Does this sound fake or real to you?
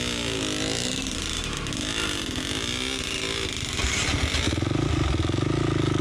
real